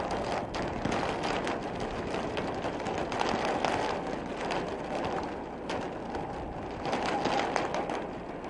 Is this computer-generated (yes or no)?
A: no